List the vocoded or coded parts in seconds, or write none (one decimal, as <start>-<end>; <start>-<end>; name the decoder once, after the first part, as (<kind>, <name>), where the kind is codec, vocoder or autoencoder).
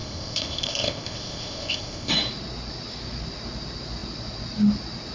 0.0-2.1 (codec, ZipCodec)